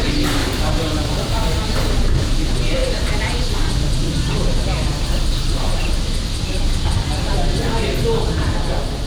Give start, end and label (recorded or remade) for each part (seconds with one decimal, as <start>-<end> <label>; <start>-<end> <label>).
0.0-0.4 recorded; 0.4-1.9 remade; 1.9-9.1 recorded